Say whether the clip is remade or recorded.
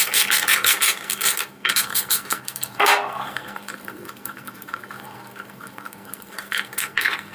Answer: remade